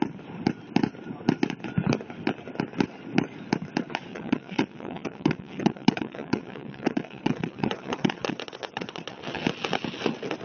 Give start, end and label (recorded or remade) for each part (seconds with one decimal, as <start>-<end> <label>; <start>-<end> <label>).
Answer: 0.0-4.1 recorded; 4.1-9.4 remade; 9.4-10.4 recorded